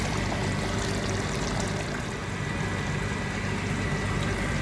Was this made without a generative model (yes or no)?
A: yes